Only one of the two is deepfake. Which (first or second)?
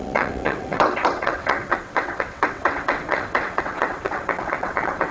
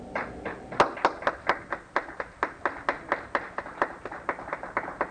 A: first